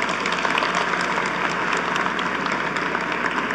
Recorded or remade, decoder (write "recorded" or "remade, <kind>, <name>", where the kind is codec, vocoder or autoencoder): recorded